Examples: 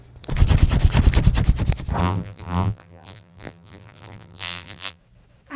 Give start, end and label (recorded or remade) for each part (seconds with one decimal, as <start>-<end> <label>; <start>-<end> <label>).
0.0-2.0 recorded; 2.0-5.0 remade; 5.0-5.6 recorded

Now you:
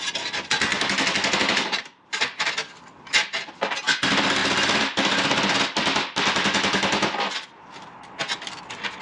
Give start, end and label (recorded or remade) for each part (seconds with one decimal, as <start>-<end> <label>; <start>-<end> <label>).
0.0-0.7 remade; 0.7-1.4 recorded; 1.4-4.4 remade; 4.4-8.6 recorded; 8.6-9.0 remade

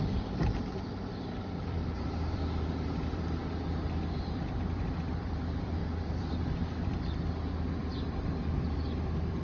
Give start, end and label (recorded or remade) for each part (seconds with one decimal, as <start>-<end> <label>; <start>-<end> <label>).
0.0-9.4 remade

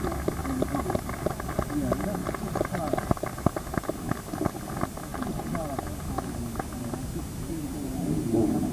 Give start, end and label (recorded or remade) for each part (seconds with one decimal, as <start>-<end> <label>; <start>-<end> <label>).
0.0-2.2 recorded; 2.2-3.1 remade; 3.1-5.1 recorded; 5.1-5.8 remade; 5.8-8.7 recorded